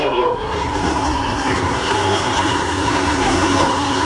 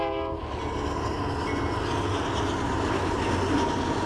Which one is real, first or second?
second